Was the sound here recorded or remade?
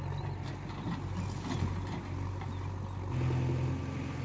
recorded